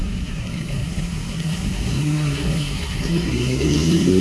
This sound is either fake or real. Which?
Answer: fake